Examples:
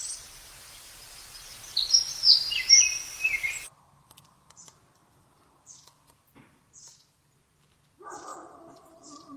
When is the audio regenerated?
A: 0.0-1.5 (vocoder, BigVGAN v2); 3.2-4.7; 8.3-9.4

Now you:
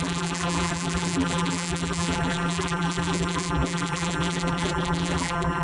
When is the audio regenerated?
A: 0.0-5.6 (vocoder, BigVGAN v2)

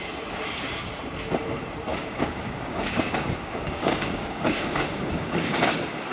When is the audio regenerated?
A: 1.9-5.6 (codec, DAC)

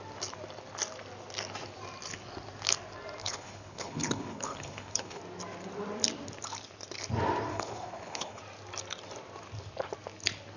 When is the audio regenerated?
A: 3.2-5.2 (codec, HILCodec); 7.5-8.4

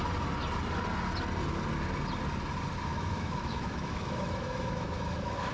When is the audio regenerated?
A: 2.9-5.5 (autoencoder, DAC-VAE)